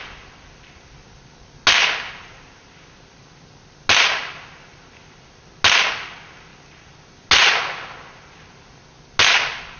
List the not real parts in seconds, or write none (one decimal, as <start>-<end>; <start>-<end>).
none

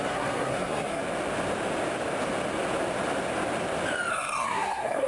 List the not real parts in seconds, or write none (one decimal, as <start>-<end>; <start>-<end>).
0.0-1.0; 4.1-5.1

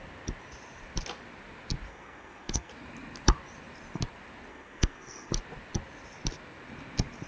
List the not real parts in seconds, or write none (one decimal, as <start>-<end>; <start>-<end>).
1.9-2.7; 4.5-5.3

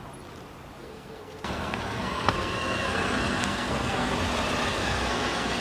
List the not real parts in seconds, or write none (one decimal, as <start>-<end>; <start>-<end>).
0.8-4.1; 4.7-5.6

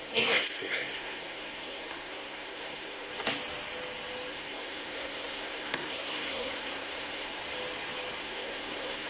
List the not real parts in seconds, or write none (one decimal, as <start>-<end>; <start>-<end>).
0.0-3.1; 4.3-7.4; 8.2-9.1

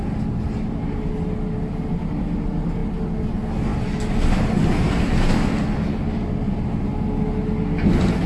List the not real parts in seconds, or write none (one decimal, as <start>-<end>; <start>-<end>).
none

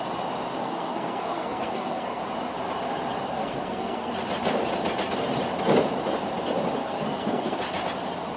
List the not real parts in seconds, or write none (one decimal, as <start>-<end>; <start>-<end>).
0.6-2.2; 3.4-4.1; 6.8-7.6